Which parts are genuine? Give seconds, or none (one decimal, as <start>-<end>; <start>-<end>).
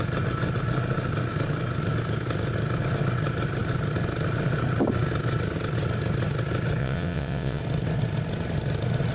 0.0-6.8; 7.6-9.1